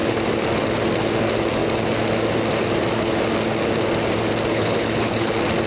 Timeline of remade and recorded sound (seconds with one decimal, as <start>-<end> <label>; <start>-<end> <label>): 0.0-4.5 recorded; 4.5-5.3 remade; 5.3-5.7 recorded